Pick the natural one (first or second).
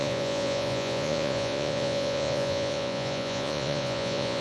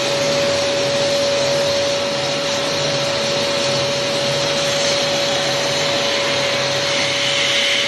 second